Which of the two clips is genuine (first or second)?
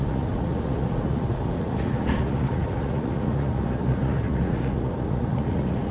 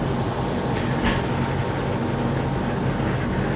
second